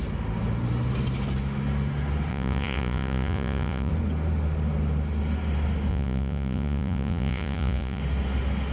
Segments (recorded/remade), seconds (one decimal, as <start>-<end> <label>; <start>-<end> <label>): 0.0-2.3 recorded; 2.3-3.9 remade; 3.9-5.9 recorded; 5.9-8.0 remade; 8.0-8.7 recorded